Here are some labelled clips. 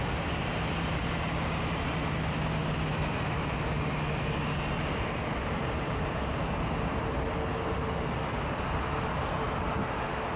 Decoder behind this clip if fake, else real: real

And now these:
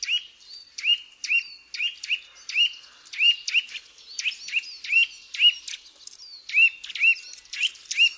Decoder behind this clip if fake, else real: real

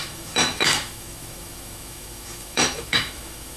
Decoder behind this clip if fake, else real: fake, autoencoder, DAC-VAE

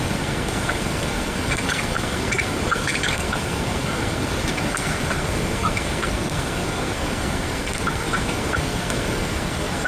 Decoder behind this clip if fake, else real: fake, codec, SNAC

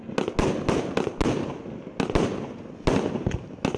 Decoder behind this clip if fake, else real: real